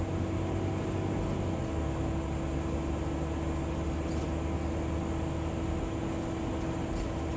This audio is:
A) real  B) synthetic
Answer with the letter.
A